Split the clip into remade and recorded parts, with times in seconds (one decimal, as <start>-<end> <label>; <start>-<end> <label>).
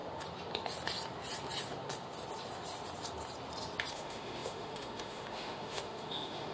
0.0-3.9 recorded; 3.9-6.5 remade